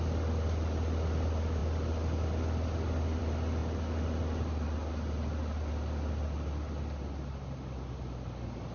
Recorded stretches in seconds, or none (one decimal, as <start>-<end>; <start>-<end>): 0.0-8.7